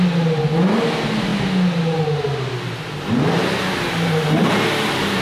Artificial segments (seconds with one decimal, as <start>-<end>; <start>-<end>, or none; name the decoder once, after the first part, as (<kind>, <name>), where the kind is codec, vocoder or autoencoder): none